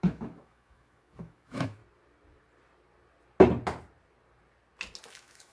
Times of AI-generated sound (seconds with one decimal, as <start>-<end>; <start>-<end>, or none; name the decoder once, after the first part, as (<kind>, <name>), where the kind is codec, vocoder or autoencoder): 0.0-1.8 (autoencoder, DAC-VAE); 5.1-5.5